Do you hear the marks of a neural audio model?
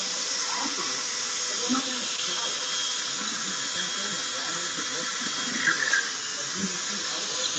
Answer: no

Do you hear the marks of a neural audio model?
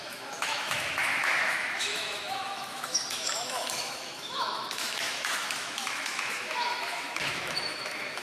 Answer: yes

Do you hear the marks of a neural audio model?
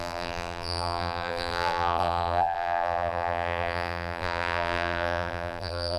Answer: yes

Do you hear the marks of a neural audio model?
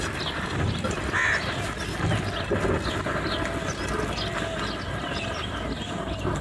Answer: no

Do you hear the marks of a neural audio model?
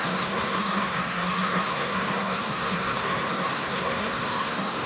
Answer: yes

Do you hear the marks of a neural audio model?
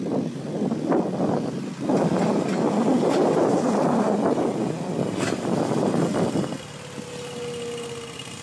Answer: no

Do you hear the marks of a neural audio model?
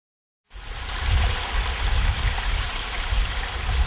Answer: no